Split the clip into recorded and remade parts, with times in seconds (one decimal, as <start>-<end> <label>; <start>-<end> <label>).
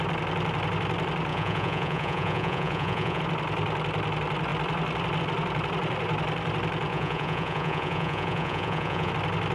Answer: 0.0-1.3 recorded; 1.3-3.2 remade; 3.2-6.9 recorded; 6.9-9.1 remade; 9.1-9.5 recorded